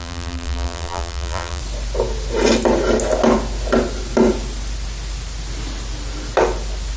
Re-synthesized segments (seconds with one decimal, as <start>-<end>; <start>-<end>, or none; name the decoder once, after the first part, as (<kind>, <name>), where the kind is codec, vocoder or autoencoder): 0.0-1.6 (vocoder, BigVGAN v2)